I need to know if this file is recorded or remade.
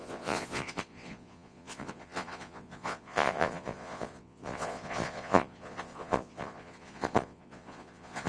remade